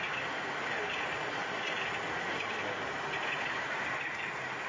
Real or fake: real